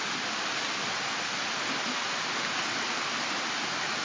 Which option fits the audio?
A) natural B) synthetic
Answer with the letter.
A